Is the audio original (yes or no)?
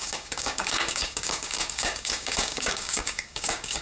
no